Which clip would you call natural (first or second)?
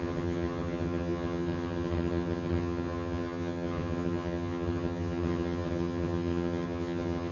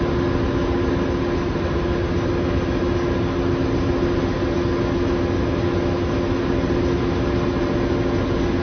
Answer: second